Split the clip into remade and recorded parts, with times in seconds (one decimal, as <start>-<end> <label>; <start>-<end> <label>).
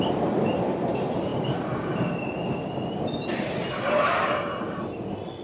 0.0-5.4 recorded